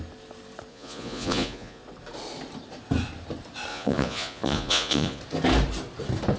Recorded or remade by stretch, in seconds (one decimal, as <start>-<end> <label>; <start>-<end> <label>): 0.0-0.7 recorded; 0.7-1.8 remade; 1.8-3.7 recorded; 3.7-5.2 remade; 5.2-6.4 recorded